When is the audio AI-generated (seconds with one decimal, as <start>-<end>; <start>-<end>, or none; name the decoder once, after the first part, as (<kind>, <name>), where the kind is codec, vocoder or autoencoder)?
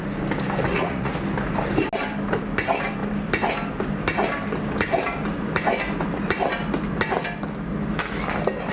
0.7-1.2 (vocoder, Vocos)